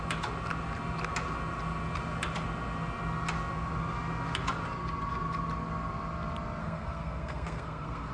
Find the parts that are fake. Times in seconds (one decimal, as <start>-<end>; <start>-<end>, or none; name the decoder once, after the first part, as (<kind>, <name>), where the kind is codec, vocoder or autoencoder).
6.6-8.1 (codec, SNAC)